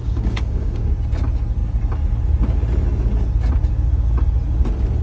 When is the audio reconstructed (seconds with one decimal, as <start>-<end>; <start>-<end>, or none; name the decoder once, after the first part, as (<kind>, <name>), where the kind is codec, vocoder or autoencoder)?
0.0-0.9 (codec, DAC)